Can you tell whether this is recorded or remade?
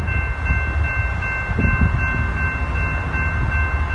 recorded